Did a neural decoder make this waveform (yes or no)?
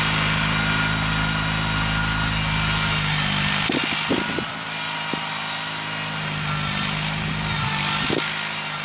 no